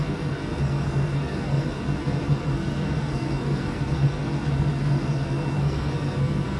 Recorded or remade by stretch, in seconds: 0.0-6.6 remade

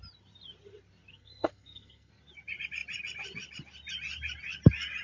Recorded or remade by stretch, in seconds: 0.0-1.1 recorded; 1.1-2.1 remade; 2.1-5.0 recorded

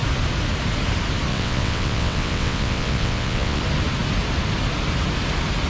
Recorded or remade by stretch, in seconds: 0.0-1.3 recorded; 1.3-3.6 remade; 3.6-5.7 recorded

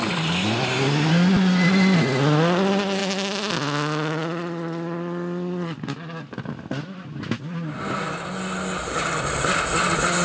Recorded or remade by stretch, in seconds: 0.0-10.2 recorded

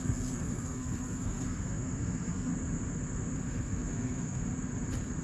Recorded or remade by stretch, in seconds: 0.0-2.5 remade; 2.5-3.5 recorded; 3.5-4.4 remade; 4.4-5.2 recorded

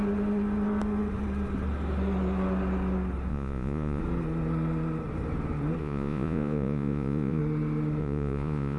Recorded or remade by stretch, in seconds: 0.0-3.3 recorded; 3.3-4.0 remade; 4.0-5.8 recorded; 5.8-7.4 remade; 7.4-8.0 recorded; 8.0-8.8 remade

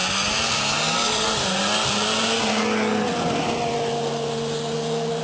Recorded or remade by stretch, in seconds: 0.0-5.2 recorded

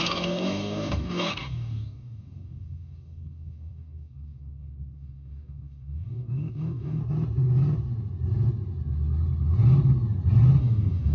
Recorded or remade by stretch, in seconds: 0.0-7.0 remade; 7.0-10.6 recorded; 10.6-11.1 remade